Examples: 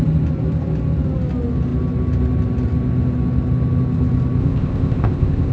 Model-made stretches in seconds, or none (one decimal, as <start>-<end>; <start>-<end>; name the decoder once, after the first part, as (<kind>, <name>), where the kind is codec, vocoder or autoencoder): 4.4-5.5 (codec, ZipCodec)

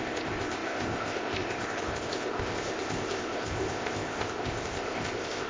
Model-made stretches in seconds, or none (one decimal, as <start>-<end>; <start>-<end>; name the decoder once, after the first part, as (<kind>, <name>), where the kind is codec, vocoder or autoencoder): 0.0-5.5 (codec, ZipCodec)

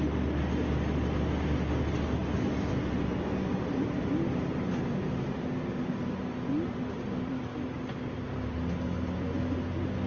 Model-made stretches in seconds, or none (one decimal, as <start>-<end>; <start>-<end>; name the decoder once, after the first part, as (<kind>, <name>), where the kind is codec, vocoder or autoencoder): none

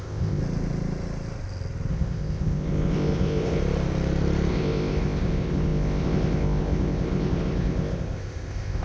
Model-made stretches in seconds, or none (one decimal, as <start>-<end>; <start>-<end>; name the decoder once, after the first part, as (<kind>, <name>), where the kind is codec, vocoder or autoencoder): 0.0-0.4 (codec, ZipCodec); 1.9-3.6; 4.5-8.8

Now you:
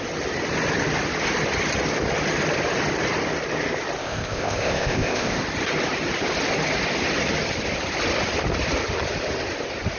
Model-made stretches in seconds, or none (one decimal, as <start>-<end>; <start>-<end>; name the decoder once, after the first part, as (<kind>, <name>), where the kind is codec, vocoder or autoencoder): 4.0-5.4 (codec, ZipCodec)

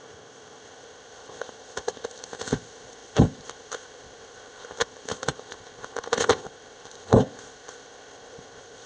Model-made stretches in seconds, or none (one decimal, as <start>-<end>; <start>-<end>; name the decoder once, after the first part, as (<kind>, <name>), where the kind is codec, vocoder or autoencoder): 0.0-8.9 (codec, ZipCodec)